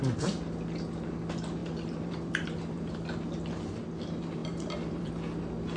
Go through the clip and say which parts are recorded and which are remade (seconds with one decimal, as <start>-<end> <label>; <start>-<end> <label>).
0.0-1.6 recorded; 1.6-2.9 remade; 2.9-4.4 recorded; 4.4-5.1 remade; 5.1-5.8 recorded